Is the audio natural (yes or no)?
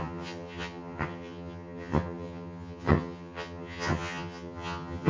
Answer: no